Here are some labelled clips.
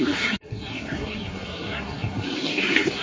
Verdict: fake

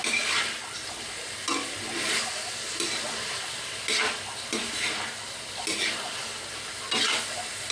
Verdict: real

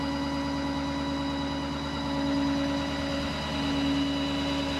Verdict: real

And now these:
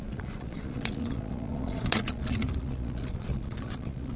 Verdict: fake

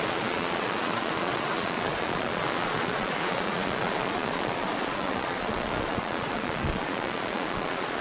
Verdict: fake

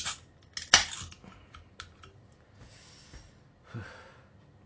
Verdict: real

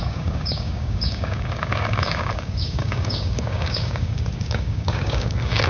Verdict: fake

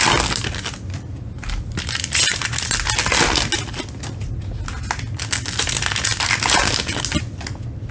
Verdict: real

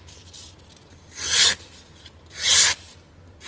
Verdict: real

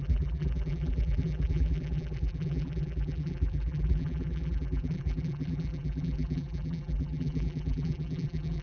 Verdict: fake